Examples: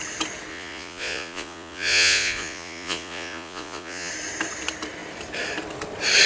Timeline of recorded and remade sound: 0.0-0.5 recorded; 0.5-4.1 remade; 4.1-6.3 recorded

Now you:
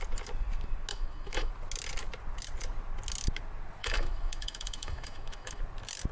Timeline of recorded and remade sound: 0.0-0.9 recorded; 0.9-1.5 remade; 1.5-3.8 recorded; 3.8-5.6 remade; 5.6-6.1 recorded

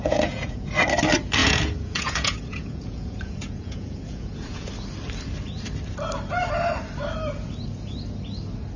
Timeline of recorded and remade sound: 0.0-0.7 remade; 0.7-1.4 recorded; 1.4-4.7 remade; 4.7-8.8 recorded

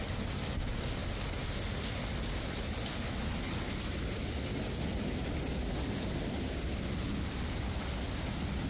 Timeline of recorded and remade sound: 0.0-8.7 recorded